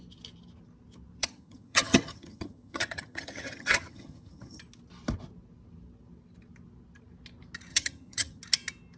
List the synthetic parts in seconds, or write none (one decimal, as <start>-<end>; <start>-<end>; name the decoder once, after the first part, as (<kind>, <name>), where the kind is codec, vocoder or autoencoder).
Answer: 1.2-4.6 (vocoder, HiFi-GAN); 7.7-8.4